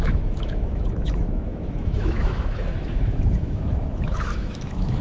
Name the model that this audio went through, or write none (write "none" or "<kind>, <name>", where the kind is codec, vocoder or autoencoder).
autoencoder, DAC-VAE